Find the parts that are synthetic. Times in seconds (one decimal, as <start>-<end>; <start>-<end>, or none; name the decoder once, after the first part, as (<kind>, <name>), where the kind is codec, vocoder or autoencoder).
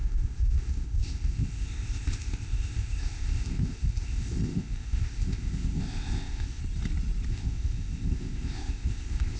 0.0-6.6 (codec, ZipCodec); 7.3-9.4